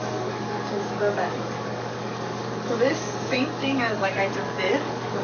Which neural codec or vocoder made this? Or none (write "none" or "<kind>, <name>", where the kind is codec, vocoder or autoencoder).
codec, DAC